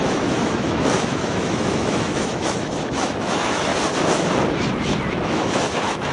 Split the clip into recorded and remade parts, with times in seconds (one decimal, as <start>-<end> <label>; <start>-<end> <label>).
0.0-3.7 remade; 3.7-5.1 recorded; 5.1-6.1 remade